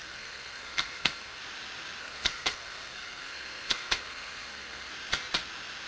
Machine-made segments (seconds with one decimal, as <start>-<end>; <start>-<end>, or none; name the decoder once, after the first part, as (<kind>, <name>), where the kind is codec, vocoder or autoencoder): 0.0-1.4 (codec, SNAC); 2.0-4.9

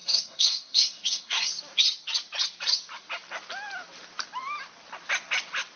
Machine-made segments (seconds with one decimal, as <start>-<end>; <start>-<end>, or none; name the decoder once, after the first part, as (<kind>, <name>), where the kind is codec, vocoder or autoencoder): 0.0-1.5 (codec, SNAC)

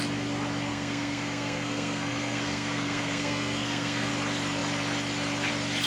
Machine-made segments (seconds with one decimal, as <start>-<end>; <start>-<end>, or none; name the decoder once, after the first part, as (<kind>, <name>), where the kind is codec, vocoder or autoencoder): 0.7-4.1 (codec, SNAC)

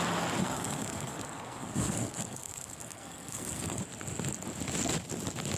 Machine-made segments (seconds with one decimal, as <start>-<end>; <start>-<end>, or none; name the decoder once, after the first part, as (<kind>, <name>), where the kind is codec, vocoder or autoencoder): 0.4-3.8 (codec, SNAC)